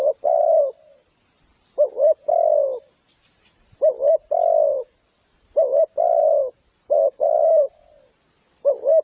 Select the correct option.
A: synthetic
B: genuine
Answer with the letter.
B